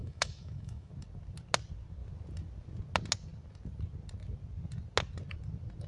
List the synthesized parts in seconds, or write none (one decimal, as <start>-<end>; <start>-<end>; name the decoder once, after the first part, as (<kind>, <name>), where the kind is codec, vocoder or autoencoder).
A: 0.0-0.9 (autoencoder, DAC-VAE)